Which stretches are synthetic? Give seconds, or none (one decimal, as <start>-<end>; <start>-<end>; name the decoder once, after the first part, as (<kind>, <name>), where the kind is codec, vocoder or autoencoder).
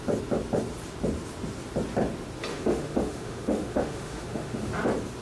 2.5-4.7 (autoencoder, DAC-VAE)